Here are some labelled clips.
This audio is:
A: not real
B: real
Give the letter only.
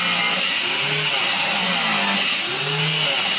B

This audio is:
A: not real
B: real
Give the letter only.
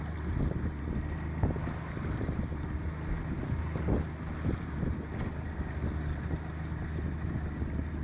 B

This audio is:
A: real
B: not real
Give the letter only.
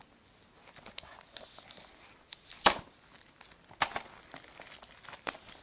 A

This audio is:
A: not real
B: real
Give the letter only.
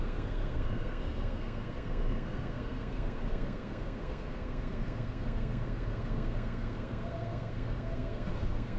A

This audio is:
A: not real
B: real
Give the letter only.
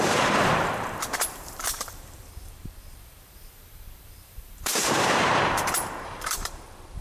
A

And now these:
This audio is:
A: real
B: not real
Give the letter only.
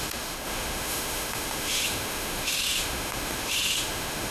B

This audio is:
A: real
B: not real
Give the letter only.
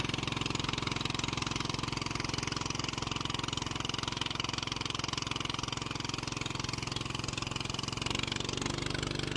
A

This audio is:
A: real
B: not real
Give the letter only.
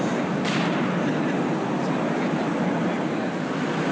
A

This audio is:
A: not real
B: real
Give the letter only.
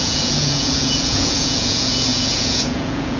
A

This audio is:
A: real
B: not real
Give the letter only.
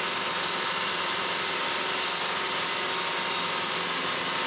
A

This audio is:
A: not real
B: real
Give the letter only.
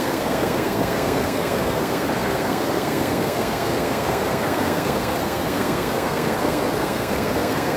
A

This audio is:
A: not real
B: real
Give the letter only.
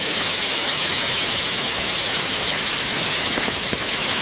A